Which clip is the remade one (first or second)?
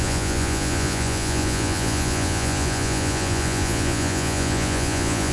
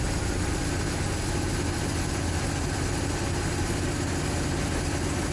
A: first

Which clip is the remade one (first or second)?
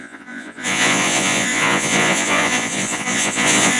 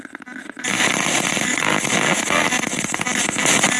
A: first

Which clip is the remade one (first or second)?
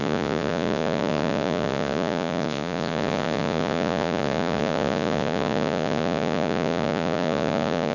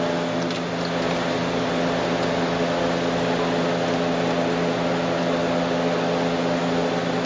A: first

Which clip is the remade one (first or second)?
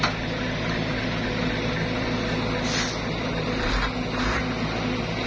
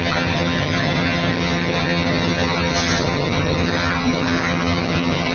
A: second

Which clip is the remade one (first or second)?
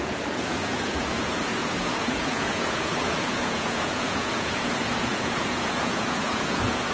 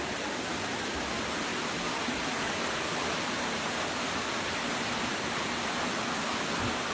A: first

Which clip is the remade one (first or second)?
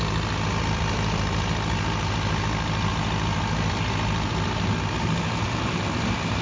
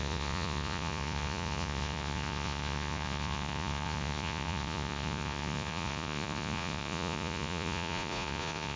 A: second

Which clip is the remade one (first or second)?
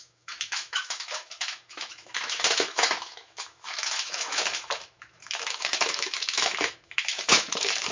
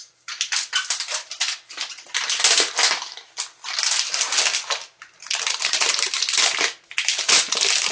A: first